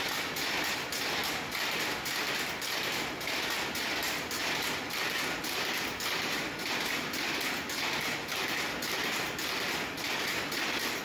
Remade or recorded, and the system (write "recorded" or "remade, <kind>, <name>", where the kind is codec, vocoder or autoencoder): recorded